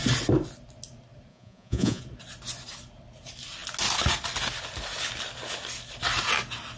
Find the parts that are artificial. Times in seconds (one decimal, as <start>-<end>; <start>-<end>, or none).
1.3-2.0